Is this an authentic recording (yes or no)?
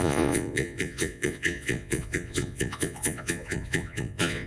no